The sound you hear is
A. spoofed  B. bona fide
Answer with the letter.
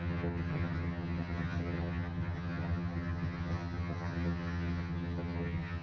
A